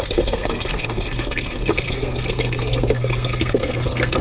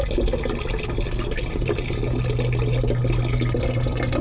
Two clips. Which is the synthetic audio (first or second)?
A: first